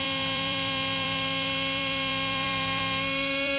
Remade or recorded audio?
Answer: remade